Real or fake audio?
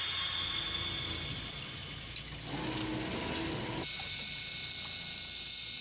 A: real